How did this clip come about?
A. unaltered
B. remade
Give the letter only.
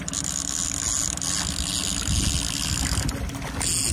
A